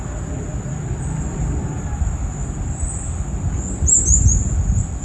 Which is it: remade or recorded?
recorded